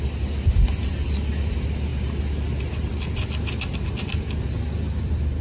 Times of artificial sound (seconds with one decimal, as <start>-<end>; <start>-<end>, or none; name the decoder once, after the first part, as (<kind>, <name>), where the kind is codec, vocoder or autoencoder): none